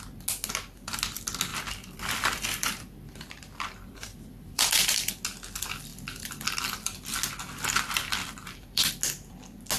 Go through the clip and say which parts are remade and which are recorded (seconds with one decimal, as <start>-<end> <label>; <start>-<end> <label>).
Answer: 0.0-1.5 recorded; 1.5-5.1 remade; 5.1-8.2 recorded; 8.2-8.9 remade; 8.9-9.8 recorded